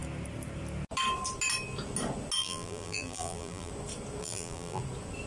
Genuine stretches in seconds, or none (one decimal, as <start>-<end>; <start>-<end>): 0.0-2.4; 3.7-4.2; 4.8-5.3